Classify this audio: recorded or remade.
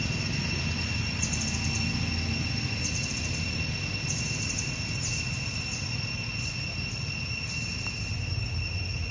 recorded